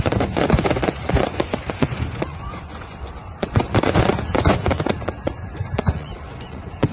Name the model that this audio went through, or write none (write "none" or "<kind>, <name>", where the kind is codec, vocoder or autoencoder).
vocoder, Vocos